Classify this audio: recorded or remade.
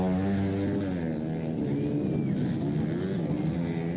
recorded